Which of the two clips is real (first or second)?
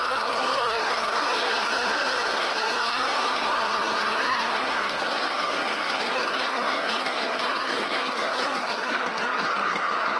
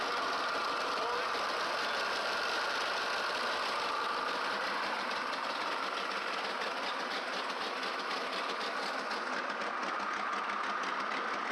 second